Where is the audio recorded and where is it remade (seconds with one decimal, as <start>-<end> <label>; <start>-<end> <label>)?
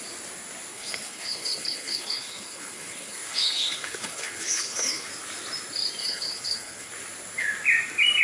0.0-0.7 recorded; 0.7-5.1 remade; 5.1-6.0 recorded; 6.0-6.9 remade; 6.9-8.2 recorded